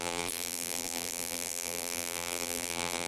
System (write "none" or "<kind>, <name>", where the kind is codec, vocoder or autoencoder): vocoder, BigVGAN v2